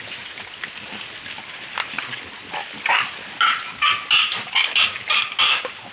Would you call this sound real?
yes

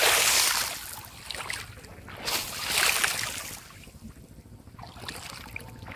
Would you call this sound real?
yes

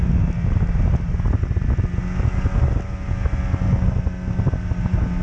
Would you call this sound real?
yes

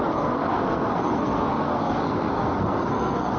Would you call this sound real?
no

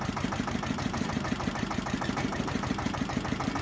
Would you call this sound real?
no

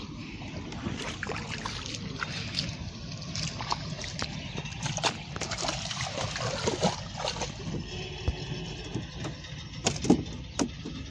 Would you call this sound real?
yes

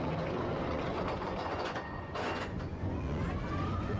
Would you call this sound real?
no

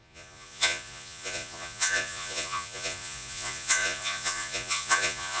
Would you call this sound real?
no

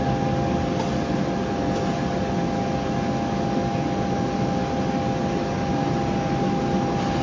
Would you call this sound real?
yes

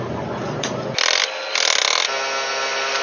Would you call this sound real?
yes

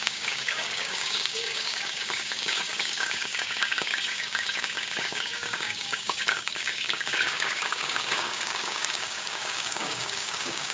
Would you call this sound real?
no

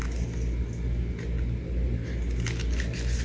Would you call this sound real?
yes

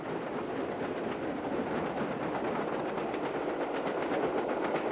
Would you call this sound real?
yes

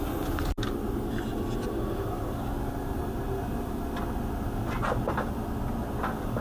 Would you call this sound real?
yes